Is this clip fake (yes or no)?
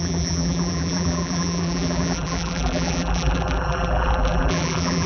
yes